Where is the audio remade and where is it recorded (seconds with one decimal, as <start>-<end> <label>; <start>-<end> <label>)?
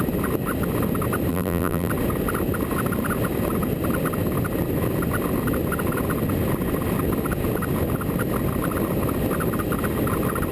0.0-1.3 recorded; 1.3-1.9 remade; 1.9-10.5 recorded